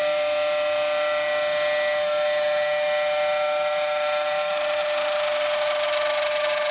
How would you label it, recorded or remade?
recorded